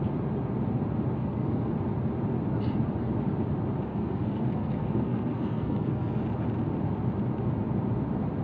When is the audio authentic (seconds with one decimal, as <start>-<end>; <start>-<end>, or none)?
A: 0.0-1.2; 1.7-3.9; 6.2-8.4